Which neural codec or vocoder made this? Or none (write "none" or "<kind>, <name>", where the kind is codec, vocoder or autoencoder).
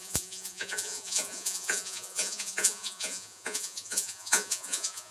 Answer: vocoder, Vocos